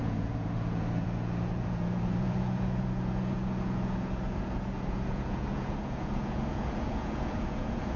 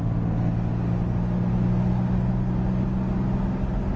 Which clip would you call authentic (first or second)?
second